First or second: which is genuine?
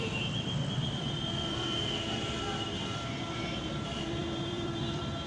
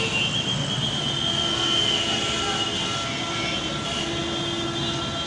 second